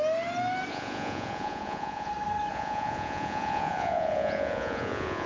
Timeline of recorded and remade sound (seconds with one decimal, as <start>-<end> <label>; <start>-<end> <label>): 0.0-0.7 recorded; 0.7-2.1 remade; 2.1-2.5 recorded; 2.5-5.3 remade